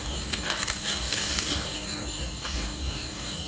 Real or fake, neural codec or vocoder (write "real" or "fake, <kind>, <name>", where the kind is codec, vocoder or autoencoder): fake, codec, DAC